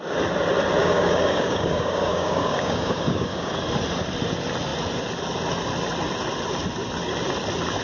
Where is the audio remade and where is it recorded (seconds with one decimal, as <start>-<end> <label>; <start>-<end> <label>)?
0.0-0.8 recorded; 0.8-3.5 remade; 3.5-7.8 recorded